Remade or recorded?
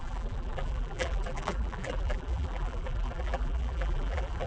remade